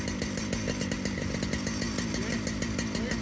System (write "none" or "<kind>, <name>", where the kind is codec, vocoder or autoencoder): none